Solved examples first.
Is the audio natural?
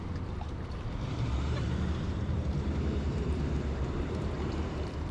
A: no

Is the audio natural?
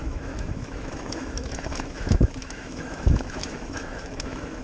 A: no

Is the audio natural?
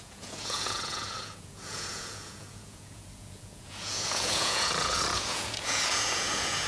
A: no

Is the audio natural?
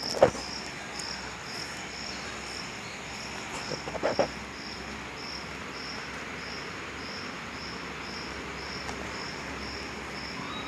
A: yes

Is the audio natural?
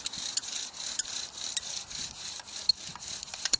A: no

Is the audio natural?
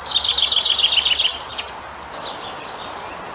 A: yes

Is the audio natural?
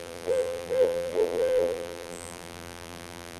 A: no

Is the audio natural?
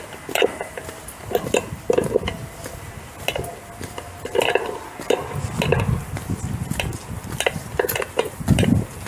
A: yes